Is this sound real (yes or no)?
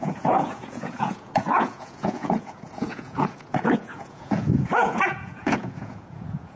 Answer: no